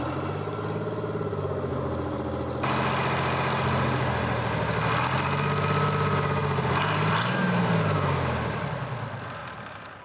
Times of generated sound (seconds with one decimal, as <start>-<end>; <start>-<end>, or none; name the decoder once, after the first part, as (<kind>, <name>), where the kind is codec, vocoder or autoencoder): 1.7-2.2 (vocoder, BigVGAN v2); 6.4-7.1; 9.4-10.0